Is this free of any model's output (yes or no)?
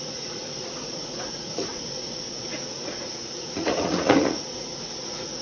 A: no